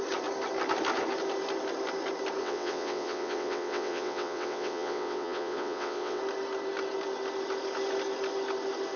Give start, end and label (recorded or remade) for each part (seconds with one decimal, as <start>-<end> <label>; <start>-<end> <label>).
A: 0.0-2.4 recorded; 2.4-6.2 remade; 6.2-9.0 recorded